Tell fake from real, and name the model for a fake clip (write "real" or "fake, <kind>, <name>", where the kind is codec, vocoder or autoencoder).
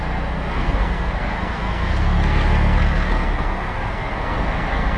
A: fake, codec, SNAC